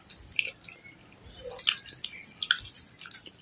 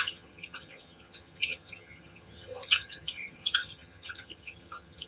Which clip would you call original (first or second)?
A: first